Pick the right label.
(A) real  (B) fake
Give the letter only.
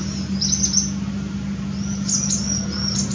A